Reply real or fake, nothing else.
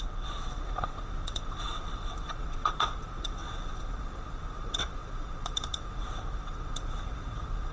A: fake